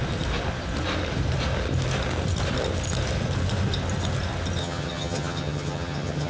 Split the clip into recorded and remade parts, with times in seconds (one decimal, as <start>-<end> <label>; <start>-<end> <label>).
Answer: 0.0-4.6 recorded; 4.6-6.3 remade

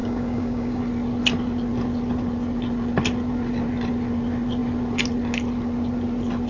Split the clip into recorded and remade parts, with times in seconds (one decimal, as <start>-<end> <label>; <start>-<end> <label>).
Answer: 0.0-0.8 remade; 0.8-6.5 recorded

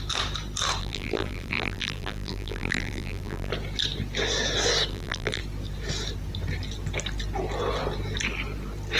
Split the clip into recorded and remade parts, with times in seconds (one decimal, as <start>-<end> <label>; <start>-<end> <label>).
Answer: 0.0-0.8 recorded; 0.8-3.5 remade; 3.5-4.9 recorded; 4.9-5.4 remade; 5.4-9.0 recorded

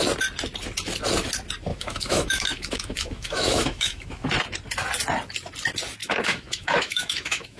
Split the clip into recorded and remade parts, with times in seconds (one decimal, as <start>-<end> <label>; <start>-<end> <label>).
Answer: 0.0-1.7 recorded; 1.7-4.3 remade; 4.3-6.0 recorded; 6.0-7.6 remade

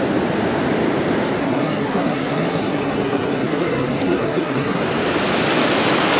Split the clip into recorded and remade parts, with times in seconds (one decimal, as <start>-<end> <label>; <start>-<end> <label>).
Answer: 0.0-1.4 recorded; 1.4-4.8 remade; 4.8-6.2 recorded

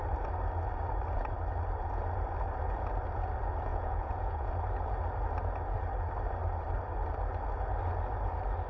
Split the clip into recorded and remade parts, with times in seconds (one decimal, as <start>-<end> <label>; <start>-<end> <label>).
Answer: 0.0-3.7 recorded; 3.7-4.5 remade; 4.5-8.7 recorded